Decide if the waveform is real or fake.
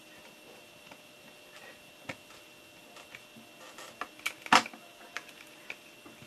real